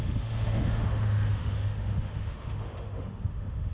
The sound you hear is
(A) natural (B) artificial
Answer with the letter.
B